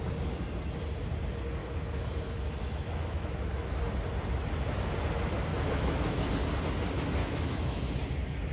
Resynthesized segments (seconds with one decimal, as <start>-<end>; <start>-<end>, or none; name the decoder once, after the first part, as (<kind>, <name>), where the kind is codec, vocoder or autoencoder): 1.6-3.8 (autoencoder, DAC-VAE); 5.5-6.3; 7.2-7.9